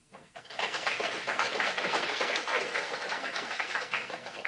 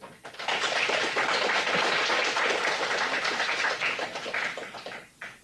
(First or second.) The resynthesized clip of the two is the first